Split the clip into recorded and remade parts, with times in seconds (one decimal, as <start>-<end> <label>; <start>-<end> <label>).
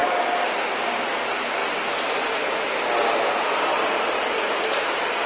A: 0.0-1.6 recorded; 1.6-2.3 remade; 2.3-5.3 recorded